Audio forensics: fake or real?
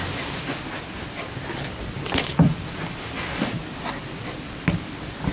real